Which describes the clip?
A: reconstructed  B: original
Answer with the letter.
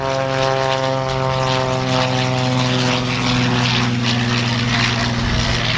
B